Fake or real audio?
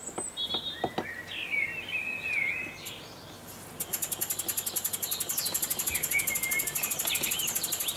real